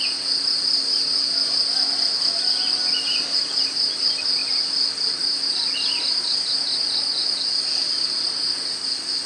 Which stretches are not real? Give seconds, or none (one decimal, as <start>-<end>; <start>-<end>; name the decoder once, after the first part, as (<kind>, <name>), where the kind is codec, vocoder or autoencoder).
none